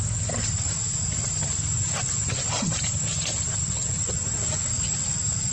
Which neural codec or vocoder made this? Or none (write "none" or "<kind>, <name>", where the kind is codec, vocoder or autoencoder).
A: none